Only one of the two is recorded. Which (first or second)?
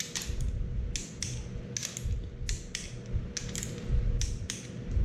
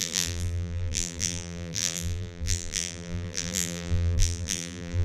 first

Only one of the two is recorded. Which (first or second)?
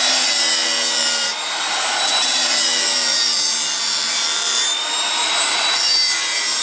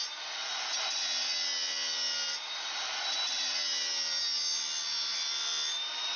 second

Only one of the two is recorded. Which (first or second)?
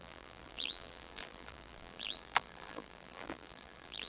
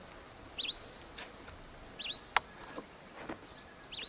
second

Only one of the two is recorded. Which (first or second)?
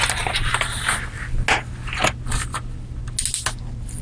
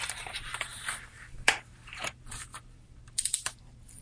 first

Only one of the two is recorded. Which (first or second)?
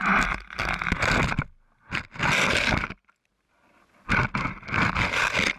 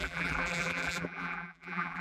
first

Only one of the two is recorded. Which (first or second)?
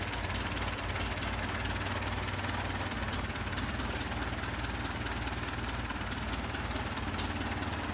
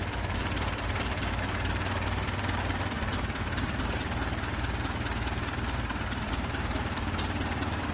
first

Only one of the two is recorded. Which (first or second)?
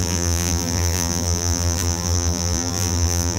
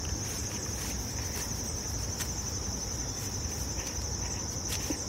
second